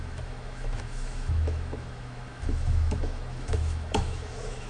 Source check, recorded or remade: remade